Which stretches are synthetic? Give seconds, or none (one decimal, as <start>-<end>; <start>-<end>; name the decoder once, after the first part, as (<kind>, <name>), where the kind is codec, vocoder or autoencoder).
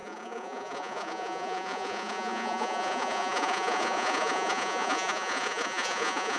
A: 0.0-6.4 (vocoder, Vocos)